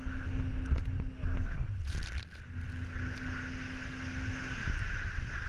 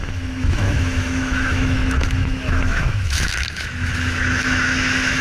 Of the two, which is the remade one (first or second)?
second